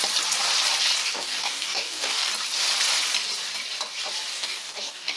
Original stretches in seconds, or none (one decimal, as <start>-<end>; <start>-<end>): 0.0-1.0; 2.3-4.3